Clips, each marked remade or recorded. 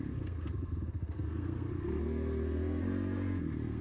remade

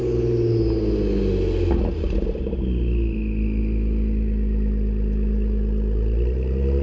recorded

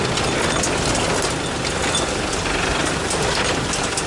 recorded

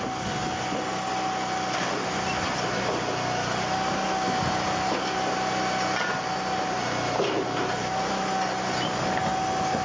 recorded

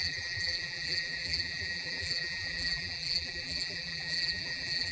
remade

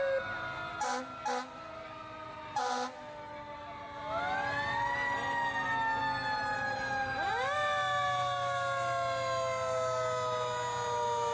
recorded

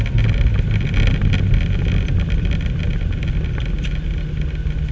recorded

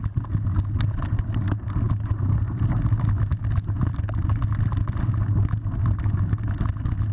recorded